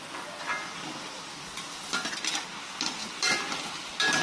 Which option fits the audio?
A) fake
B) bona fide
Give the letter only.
B